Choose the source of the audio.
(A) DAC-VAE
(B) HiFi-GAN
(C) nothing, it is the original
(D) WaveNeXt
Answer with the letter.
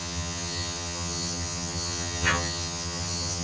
B